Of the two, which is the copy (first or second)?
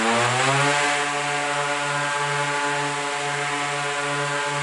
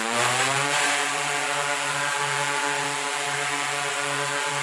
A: second